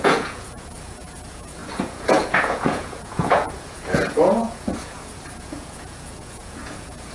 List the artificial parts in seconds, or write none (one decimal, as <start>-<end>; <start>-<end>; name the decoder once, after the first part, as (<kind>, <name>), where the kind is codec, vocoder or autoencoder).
0.0-7.1 (vocoder, Vocos)